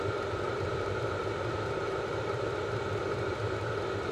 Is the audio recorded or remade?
remade